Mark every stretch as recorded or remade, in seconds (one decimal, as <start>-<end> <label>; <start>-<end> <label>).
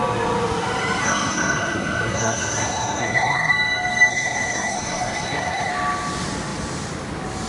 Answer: 0.0-1.0 recorded; 1.0-3.5 remade; 3.5-4.1 recorded; 4.1-5.7 remade; 5.7-7.5 recorded